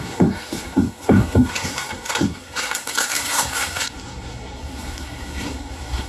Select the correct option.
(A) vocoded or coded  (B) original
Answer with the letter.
A